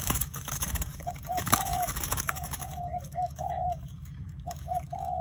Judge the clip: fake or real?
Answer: fake